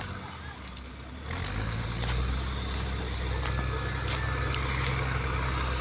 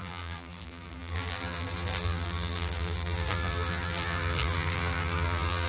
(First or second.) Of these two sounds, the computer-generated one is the second